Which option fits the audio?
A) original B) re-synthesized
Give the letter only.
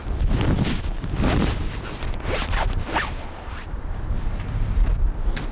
B